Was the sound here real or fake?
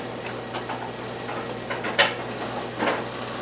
real